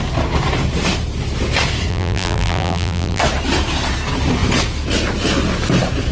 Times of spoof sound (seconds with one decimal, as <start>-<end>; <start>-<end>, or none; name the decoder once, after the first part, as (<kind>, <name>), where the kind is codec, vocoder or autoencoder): 1.9-3.2 (vocoder, BigVGAN v2)